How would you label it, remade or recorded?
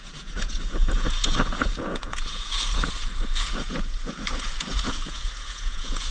remade